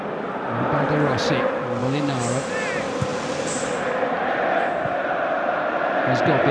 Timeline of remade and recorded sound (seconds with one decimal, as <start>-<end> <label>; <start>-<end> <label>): 0.0-1.8 recorded; 1.8-2.5 remade; 2.5-6.5 recorded